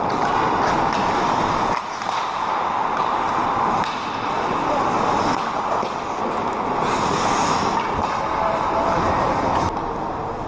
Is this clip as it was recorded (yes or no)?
yes